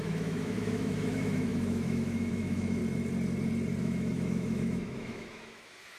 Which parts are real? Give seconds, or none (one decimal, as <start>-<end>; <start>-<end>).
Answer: 2.8-3.8